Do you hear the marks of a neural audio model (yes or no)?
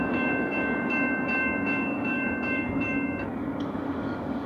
yes